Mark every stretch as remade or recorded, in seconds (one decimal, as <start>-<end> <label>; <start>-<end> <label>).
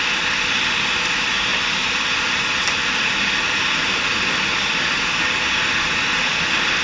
0.0-6.8 recorded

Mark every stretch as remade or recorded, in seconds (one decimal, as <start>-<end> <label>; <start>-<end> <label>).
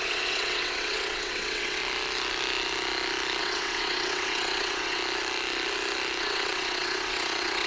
0.0-1.8 remade; 1.8-3.4 recorded; 3.4-5.0 remade; 5.0-6.2 recorded; 6.2-7.7 remade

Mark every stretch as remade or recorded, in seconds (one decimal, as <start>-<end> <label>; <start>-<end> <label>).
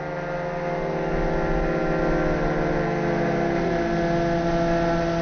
0.0-5.2 recorded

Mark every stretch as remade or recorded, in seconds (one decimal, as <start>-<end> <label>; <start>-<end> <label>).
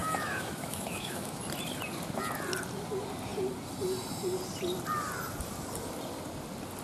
0.0-1.4 remade; 1.4-6.8 recorded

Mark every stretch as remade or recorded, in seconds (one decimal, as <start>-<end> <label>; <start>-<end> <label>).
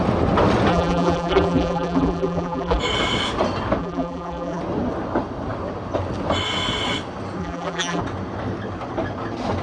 0.0-0.7 recorded; 0.7-2.8 remade; 2.8-3.8 recorded; 3.8-4.6 remade; 4.6-7.4 recorded; 7.4-8.0 remade; 8.0-9.6 recorded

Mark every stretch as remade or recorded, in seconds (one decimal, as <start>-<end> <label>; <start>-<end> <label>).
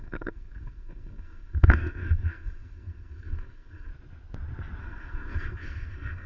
0.0-3.9 remade; 3.9-4.8 recorded; 4.8-6.3 remade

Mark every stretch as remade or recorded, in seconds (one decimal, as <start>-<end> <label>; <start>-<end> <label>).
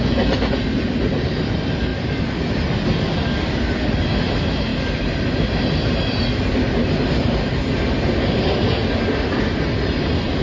0.0-10.4 recorded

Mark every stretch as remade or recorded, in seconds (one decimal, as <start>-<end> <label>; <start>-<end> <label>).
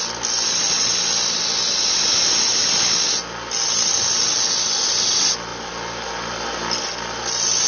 0.0-7.7 recorded